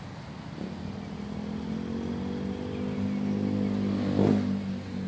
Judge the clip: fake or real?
real